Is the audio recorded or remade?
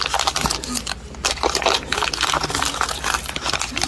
recorded